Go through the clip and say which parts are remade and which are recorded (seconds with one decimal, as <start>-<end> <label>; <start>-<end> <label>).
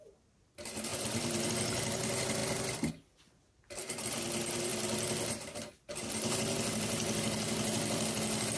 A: 0.0-8.6 recorded